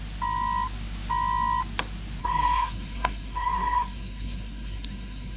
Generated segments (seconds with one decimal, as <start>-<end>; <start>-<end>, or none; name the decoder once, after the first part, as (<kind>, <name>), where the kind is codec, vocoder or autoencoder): 2.2-5.4 (codec, SNAC)